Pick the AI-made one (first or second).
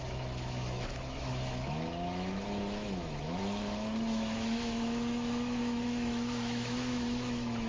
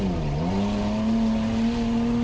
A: first